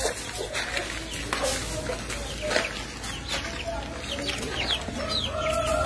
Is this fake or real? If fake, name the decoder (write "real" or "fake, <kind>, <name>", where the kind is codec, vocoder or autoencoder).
real